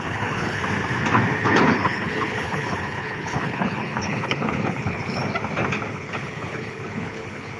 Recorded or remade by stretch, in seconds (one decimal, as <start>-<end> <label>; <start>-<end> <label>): 0.0-0.6 remade; 0.6-1.4 recorded; 1.4-5.2 remade; 5.2-5.9 recorded; 5.9-7.6 remade